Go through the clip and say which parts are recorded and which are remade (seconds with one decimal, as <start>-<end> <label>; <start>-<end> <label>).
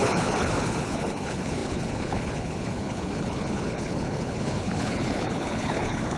0.0-6.2 remade